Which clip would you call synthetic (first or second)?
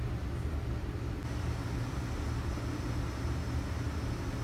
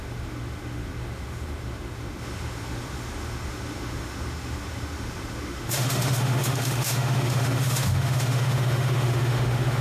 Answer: second